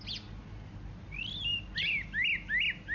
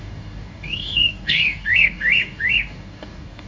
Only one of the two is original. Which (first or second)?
first